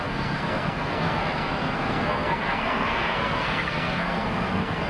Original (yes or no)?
no